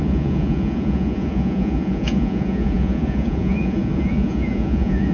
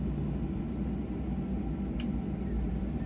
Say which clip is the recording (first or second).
second